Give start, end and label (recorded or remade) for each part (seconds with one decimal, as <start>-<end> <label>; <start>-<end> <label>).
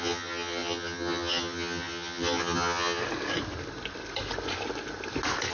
0.0-3.0 remade; 3.0-5.5 recorded